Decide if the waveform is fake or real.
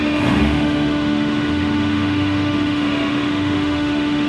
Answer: fake